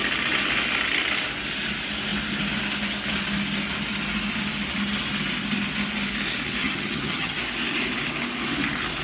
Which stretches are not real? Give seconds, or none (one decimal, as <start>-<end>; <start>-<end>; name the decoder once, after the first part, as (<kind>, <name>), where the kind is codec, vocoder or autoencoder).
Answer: 6.6-7.4 (vocoder, HiFi-GAN)